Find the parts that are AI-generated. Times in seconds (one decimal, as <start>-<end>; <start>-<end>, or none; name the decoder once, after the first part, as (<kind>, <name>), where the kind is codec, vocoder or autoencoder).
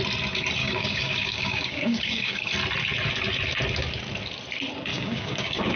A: 0.6-2.5 (codec, DAC); 4.9-5.8